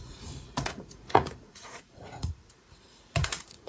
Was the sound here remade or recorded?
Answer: remade